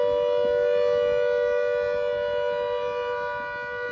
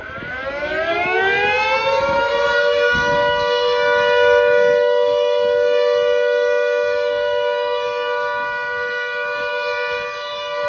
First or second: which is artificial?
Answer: second